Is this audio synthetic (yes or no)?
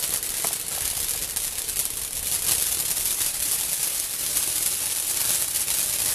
no